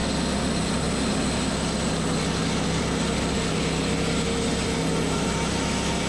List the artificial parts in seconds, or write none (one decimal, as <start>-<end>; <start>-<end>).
none

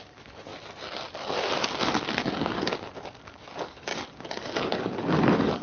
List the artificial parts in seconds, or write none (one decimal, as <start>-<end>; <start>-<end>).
0.0-0.5; 3.3-3.9; 4.6-5.6